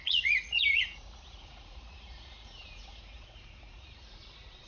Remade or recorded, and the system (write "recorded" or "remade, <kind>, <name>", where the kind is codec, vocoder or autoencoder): remade, vocoder, Vocos